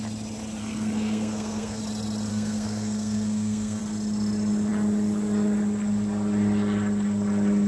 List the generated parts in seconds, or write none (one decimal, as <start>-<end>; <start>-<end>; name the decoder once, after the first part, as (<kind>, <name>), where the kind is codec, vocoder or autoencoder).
0.6-1.8 (codec, SNAC); 2.3-3.8